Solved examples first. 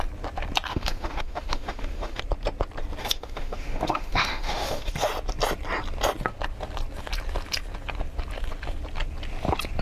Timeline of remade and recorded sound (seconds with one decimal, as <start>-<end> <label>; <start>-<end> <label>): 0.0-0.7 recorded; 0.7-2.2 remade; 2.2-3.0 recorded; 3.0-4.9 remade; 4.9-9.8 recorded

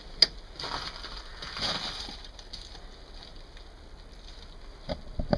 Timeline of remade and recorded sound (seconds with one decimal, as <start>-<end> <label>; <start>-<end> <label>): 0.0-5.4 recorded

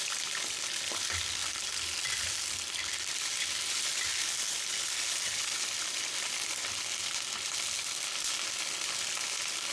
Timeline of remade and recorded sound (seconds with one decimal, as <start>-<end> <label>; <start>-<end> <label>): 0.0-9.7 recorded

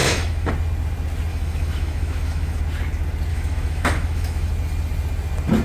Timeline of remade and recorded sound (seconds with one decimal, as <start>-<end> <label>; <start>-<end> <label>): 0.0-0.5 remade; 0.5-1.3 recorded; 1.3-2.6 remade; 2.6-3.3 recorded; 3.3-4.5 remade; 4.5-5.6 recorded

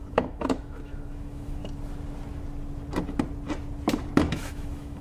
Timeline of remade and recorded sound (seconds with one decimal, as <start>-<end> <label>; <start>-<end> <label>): 0.0-1.6 remade; 1.6-4.3 recorded; 4.3-5.0 remade

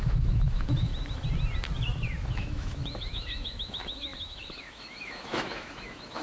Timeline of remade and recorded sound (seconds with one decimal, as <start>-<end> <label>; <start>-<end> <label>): 0.0-0.9 remade; 0.9-2.3 recorded; 2.3-6.2 remade

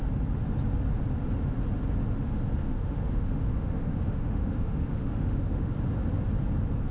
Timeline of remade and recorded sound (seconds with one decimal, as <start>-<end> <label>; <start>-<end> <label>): 0.0-2.6 recorded; 2.6-5.7 remade; 5.7-6.9 recorded